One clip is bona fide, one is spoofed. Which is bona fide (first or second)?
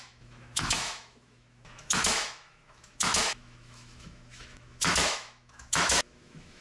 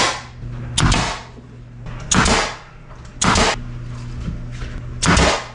second